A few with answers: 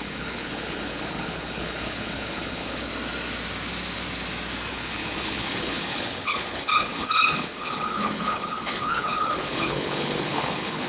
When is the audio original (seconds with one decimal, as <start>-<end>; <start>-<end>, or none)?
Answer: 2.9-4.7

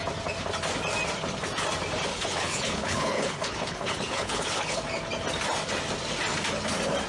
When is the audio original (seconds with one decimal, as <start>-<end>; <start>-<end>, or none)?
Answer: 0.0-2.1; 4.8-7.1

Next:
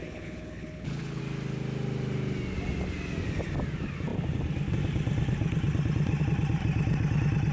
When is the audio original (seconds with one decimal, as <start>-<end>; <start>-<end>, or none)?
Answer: 1.2-7.5

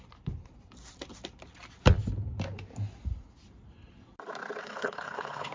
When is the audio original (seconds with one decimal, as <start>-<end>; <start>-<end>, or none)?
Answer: 0.0-4.6

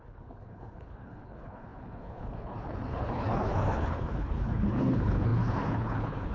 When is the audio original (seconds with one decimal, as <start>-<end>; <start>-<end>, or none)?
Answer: none

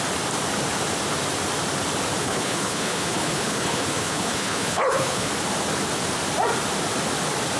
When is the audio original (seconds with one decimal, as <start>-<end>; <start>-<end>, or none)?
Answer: 0.0-2.2; 5.3-7.6

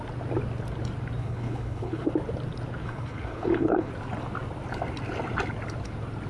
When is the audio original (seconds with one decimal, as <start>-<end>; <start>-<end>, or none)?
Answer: 0.0-1.2; 2.1-2.8; 3.9-6.3